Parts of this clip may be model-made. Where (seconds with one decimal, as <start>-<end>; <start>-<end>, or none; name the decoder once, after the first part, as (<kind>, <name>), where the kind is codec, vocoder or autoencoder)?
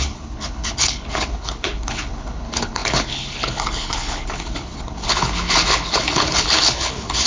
0.0-7.3 (codec, HILCodec)